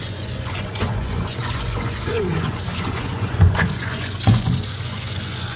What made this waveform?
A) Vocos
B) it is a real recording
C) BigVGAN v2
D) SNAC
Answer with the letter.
A